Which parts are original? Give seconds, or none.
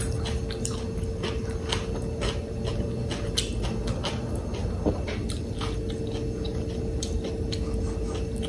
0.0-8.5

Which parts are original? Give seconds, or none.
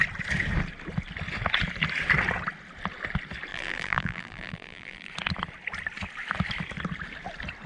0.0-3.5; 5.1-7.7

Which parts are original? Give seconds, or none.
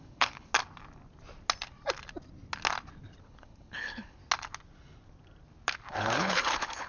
0.5-3.2; 4.2-5.9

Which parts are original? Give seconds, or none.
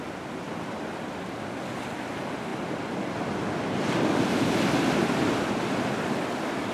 0.0-6.7